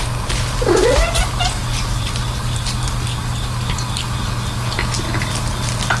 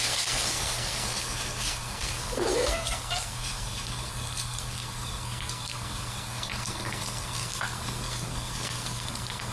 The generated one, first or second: second